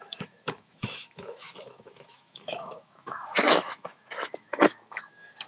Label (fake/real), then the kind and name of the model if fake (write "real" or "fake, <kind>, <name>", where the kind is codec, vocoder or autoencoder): fake, autoencoder, DAC-VAE